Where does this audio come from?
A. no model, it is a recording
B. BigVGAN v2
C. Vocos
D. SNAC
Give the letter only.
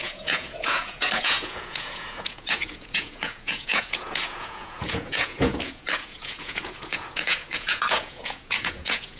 C